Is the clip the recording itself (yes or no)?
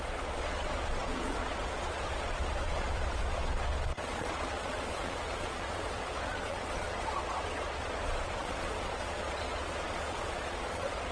no